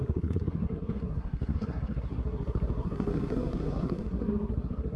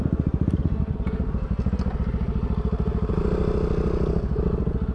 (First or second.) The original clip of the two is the second